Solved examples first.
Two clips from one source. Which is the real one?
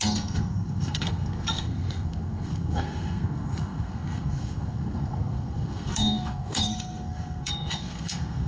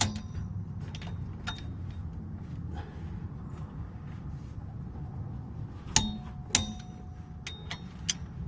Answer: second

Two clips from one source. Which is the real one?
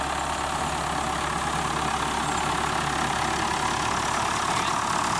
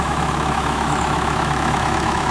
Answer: first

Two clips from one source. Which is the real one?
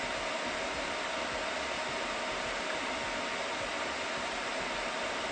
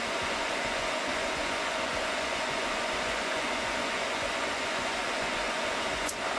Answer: first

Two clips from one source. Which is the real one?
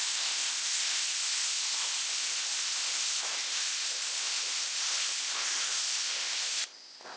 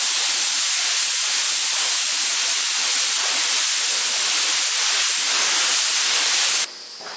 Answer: second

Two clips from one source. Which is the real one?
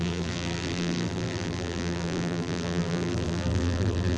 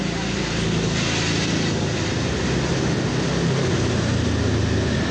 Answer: second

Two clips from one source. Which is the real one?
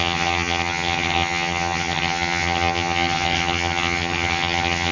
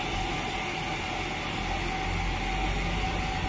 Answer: second